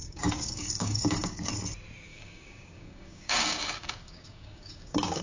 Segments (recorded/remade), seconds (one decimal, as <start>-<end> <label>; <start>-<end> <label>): 0.0-1.5 remade; 1.5-2.1 recorded; 2.1-5.2 remade